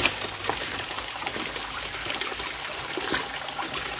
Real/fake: real